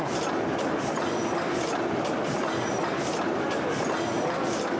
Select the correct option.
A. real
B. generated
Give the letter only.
A